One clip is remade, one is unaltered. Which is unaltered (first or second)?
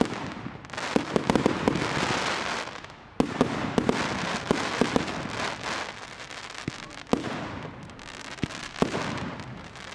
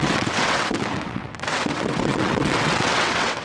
first